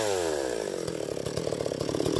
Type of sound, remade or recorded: recorded